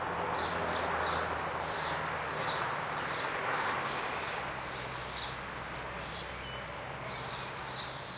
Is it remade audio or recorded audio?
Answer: recorded